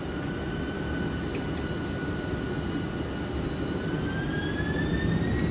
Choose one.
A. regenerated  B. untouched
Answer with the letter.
B